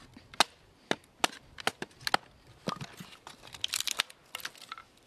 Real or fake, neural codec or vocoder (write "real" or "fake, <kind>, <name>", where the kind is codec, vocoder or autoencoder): real